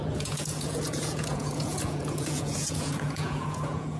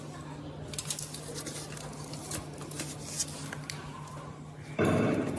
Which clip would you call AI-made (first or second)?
first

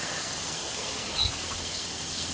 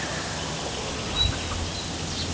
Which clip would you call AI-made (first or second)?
first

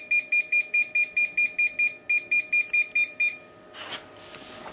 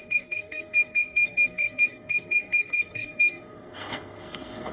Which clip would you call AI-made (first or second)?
second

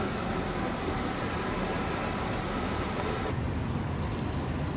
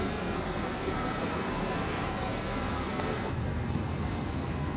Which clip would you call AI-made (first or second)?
second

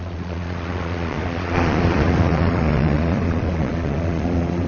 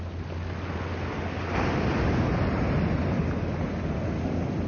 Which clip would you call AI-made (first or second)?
first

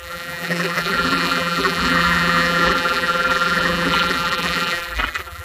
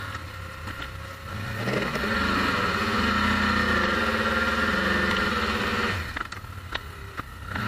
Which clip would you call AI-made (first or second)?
first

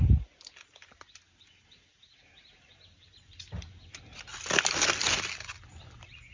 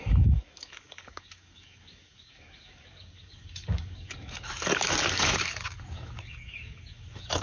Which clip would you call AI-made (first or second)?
second